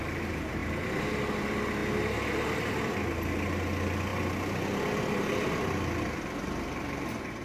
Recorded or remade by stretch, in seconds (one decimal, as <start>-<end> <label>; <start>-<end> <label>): 0.0-7.4 recorded